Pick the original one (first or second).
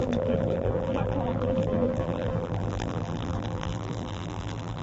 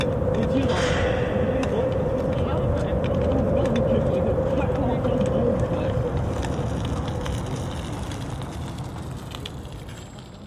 second